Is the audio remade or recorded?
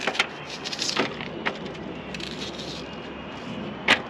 recorded